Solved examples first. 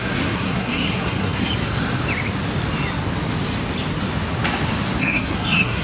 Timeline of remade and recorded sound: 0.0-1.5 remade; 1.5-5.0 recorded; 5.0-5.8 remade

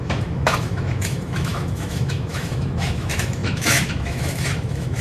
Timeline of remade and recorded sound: 0.0-5.0 remade

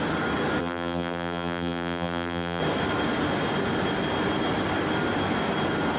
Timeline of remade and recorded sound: 0.0-0.6 recorded; 0.6-2.6 remade; 2.6-6.0 recorded

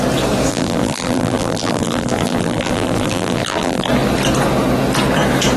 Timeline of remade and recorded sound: 0.0-0.5 recorded; 0.5-3.9 remade; 3.9-5.6 recorded